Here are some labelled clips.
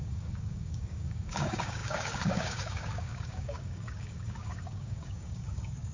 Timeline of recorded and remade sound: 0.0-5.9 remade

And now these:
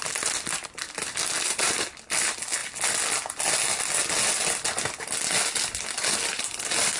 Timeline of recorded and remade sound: 0.0-7.0 recorded

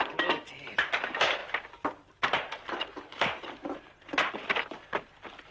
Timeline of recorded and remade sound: 0.0-5.5 recorded

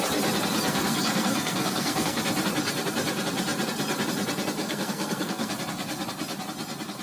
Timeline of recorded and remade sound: 0.0-0.7 recorded; 0.7-2.2 remade; 2.2-4.6 recorded; 4.6-5.5 remade; 5.5-7.0 recorded

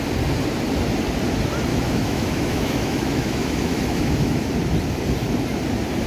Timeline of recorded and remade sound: 0.0-1.7 recorded; 1.7-4.5 remade; 4.5-6.1 recorded

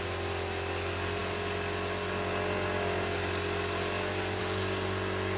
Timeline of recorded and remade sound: 0.0-5.4 recorded